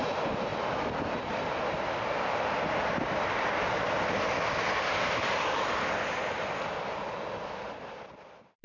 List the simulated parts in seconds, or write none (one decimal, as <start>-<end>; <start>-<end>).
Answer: 0.0-0.5; 1.2-8.6